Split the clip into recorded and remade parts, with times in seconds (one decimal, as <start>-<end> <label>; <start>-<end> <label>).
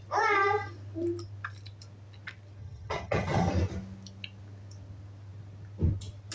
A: 0.0-2.6 recorded; 2.6-3.5 remade; 3.5-6.3 recorded